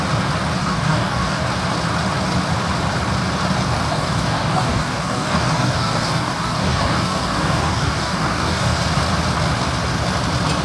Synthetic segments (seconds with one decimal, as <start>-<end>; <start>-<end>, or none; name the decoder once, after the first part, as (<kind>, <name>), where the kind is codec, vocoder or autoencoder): 0.6-1.4 (codec, DAC); 3.9-8.8